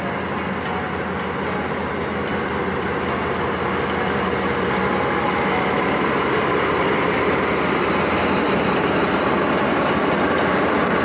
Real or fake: real